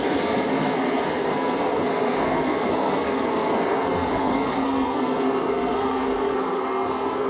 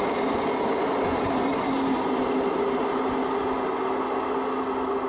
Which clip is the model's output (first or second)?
first